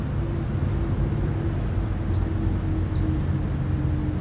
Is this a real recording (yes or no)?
yes